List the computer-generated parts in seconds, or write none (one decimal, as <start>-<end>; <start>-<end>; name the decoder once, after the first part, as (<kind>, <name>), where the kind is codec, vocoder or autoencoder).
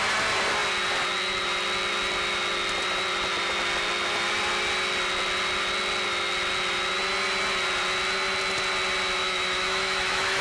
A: 9.2-10.4 (autoencoder, DAC-VAE)